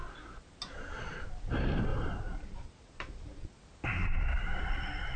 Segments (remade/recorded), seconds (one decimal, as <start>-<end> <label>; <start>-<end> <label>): 0.0-1.9 recorded; 1.9-3.6 remade; 3.6-5.2 recorded